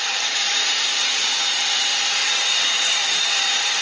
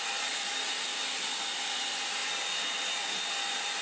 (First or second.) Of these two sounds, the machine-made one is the first